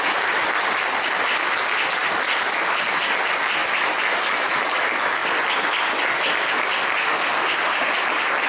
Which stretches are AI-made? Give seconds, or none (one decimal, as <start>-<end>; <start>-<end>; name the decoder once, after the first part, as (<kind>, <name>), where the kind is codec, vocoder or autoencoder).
7.0-7.9 (autoencoder, DAC-VAE)